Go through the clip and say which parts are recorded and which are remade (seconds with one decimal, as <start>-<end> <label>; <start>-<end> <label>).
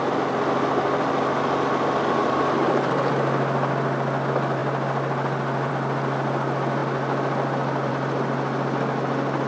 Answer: 0.0-2.2 recorded; 2.2-3.1 remade; 3.1-9.5 recorded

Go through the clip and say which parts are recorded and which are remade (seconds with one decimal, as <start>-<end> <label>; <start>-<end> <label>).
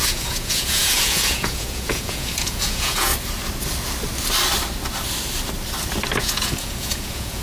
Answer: 0.0-3.1 remade; 3.1-6.2 recorded; 6.2-7.4 remade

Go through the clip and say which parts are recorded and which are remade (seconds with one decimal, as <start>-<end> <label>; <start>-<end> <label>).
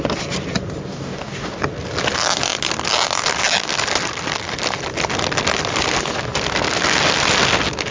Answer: 0.0-0.9 recorded; 0.9-1.6 remade; 1.6-7.9 recorded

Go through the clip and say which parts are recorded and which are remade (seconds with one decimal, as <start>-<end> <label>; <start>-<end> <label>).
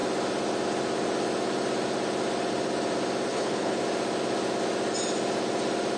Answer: 0.0-3.3 recorded; 3.3-3.8 remade; 3.8-6.0 recorded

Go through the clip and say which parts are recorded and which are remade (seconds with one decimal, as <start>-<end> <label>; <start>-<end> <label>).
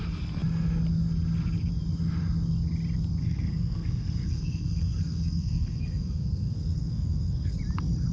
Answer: 0.0-3.2 recorded; 3.2-7.6 remade; 7.6-8.1 recorded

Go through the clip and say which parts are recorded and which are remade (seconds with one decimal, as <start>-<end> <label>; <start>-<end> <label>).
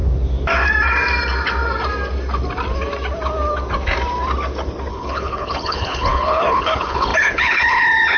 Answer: 0.0-4.9 recorded; 4.9-8.2 remade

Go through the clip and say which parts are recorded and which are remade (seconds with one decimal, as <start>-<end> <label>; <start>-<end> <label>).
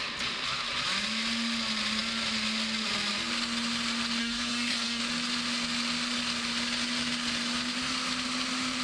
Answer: 0.0-4.2 recorded; 4.2-5.0 remade; 5.0-8.8 recorded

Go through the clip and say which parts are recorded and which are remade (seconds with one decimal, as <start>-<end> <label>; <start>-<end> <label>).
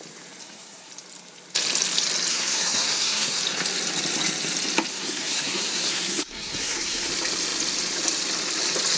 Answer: 0.0-0.4 recorded; 0.4-0.9 remade; 0.9-2.3 recorded; 2.3-3.4 remade; 3.4-4.9 recorded; 4.9-7.1 remade; 7.1-9.0 recorded